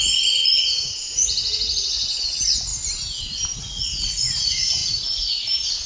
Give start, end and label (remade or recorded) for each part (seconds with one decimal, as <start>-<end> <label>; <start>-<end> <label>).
0.0-2.7 remade; 2.7-3.6 recorded; 3.6-4.8 remade; 4.8-5.9 recorded